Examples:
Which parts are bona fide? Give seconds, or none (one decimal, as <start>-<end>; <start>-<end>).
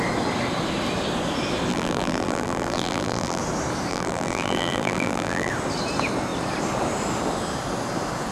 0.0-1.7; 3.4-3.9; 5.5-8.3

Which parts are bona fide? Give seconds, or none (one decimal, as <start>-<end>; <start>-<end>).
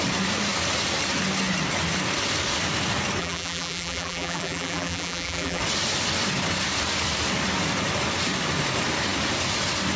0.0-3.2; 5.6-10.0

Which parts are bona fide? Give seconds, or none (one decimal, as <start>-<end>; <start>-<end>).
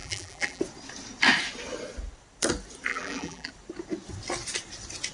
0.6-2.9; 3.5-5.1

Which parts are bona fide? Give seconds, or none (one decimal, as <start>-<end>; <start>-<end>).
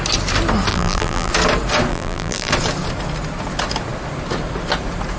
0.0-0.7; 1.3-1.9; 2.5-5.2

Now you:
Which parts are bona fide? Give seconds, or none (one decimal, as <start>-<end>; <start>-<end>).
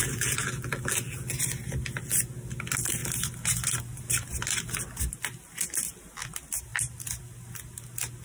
1.4-8.2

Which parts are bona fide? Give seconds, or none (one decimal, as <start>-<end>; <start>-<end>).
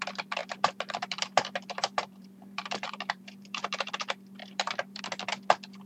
0.0-0.4; 3.9-4.4; 5.0-5.9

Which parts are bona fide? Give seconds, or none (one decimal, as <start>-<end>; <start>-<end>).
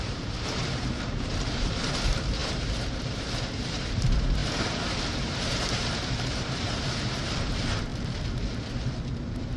7.9-9.2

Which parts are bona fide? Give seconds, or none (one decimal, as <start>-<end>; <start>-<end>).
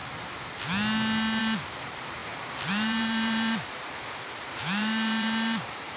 0.0-1.4; 2.2-2.7